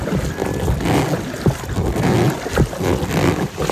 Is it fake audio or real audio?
real